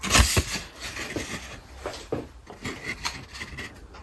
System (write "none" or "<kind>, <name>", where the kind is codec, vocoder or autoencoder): none